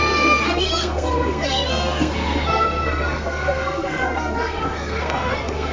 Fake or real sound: fake